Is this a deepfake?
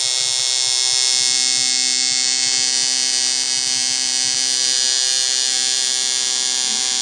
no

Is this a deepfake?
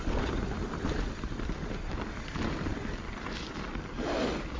no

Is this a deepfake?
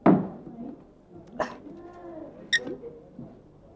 no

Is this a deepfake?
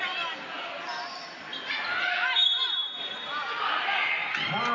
no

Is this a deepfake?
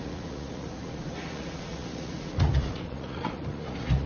yes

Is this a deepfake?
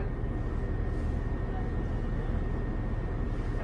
no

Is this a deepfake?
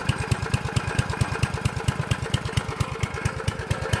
no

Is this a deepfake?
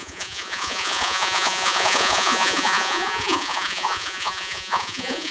yes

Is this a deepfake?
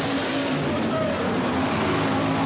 no